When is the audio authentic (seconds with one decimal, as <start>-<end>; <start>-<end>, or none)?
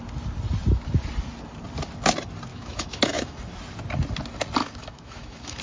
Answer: 0.0-2.5; 3.4-4.6